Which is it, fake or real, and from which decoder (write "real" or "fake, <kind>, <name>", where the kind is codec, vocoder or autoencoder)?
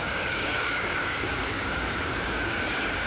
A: fake, codec, DAC